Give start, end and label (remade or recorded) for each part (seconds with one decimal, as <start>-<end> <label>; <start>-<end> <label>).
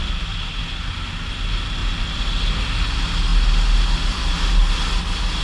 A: 0.0-5.4 recorded